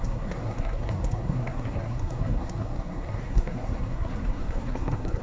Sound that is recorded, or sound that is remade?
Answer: remade